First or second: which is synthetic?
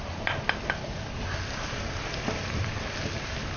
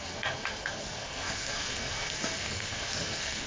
second